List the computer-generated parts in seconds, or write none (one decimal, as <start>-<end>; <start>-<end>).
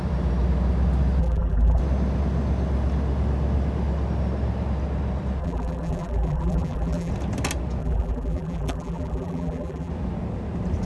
1.2-1.8; 5.4-7.1; 7.8-9.9